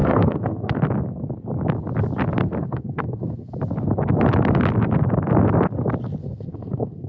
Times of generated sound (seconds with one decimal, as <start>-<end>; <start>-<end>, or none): 0.0-0.8; 2.6-3.6; 6.2-7.1